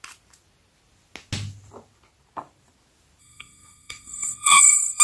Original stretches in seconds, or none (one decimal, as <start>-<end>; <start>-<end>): 0.0-3.2